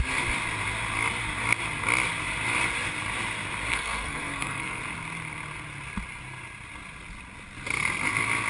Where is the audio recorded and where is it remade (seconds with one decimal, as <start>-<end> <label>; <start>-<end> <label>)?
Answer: 0.0-3.7 recorded; 3.7-4.8 remade; 4.8-8.5 recorded